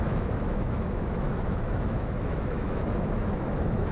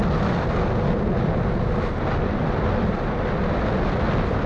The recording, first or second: second